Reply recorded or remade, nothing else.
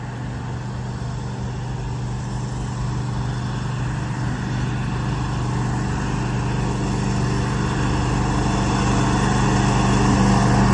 recorded